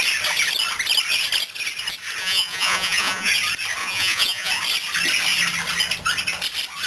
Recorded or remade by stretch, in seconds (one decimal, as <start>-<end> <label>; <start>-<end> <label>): 0.0-2.2 recorded; 2.2-3.3 remade; 3.3-3.8 recorded; 3.8-4.5 remade; 4.5-6.9 recorded